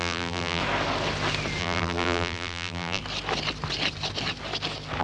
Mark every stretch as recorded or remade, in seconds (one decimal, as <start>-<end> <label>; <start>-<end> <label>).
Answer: 0.0-0.6 remade; 0.6-1.6 recorded; 1.6-3.0 remade; 3.0-5.0 recorded